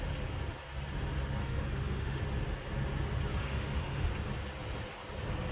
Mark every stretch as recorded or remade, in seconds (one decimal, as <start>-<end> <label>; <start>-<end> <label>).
0.0-1.4 recorded; 1.4-2.2 remade; 2.2-3.4 recorded; 3.4-4.1 remade; 4.1-5.5 recorded